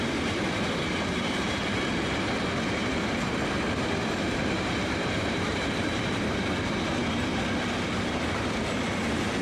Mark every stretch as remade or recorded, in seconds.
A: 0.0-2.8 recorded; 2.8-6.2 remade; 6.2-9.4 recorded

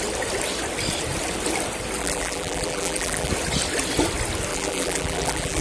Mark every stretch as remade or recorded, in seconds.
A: 0.0-2.0 recorded; 2.0-3.3 remade; 3.3-4.5 recorded; 4.5-5.6 remade

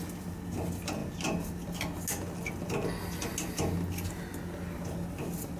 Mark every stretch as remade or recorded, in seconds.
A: 0.0-5.6 recorded

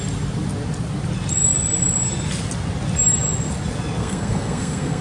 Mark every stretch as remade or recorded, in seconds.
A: 0.0-4.0 recorded; 4.0-5.0 remade

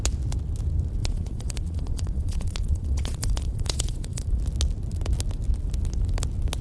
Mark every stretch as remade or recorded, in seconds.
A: 0.0-1.0 recorded; 1.0-4.4 remade; 4.4-6.6 recorded

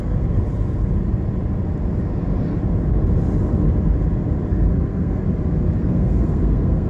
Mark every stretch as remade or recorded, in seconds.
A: 0.0-0.4 remade; 0.4-4.5 recorded; 4.5-5.2 remade; 5.2-5.8 recorded; 5.8-6.9 remade